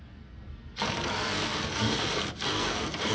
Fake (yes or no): yes